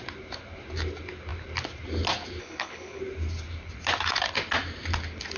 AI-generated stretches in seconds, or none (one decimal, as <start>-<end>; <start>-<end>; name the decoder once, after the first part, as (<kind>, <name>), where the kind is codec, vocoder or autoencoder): 2.4-3.0 (codec, HILCodec)